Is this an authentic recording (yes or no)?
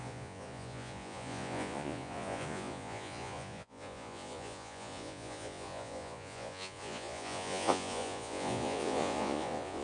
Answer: no